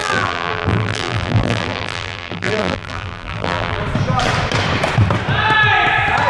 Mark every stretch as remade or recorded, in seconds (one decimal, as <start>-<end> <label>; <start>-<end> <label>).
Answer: 0.0-3.8 remade; 3.8-6.3 recorded

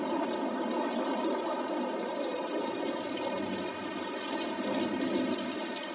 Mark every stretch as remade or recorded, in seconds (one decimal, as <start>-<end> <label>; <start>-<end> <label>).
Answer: 0.0-2.3 recorded; 2.3-4.4 remade; 4.4-5.9 recorded

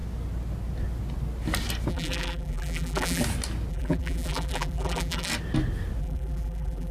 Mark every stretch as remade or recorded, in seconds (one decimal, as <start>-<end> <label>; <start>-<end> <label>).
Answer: 0.0-1.9 recorded; 1.9-3.2 remade; 3.2-3.7 recorded; 3.7-5.3 remade; 5.3-6.0 recorded; 6.0-6.9 remade

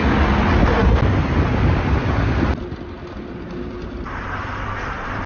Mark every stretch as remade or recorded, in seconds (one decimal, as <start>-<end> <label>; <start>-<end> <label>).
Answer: 0.0-5.3 recorded

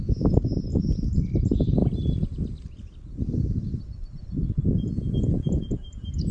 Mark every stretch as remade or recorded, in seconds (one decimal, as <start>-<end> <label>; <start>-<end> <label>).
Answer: 0.0-0.7 recorded; 0.7-1.3 remade; 1.3-6.3 recorded